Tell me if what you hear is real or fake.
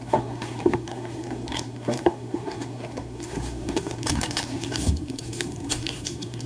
fake